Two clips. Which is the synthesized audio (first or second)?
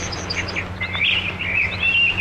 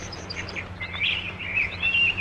second